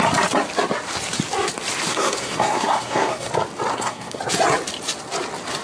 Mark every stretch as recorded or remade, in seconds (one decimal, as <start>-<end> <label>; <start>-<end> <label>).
0.0-1.9 recorded; 1.9-3.3 remade; 3.3-3.7 recorded; 3.7-4.2 remade; 4.2-5.6 recorded